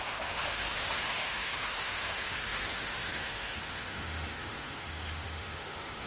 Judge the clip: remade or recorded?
remade